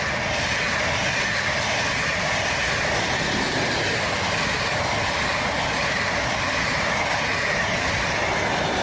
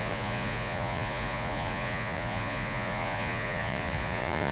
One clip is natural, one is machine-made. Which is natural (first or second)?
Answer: first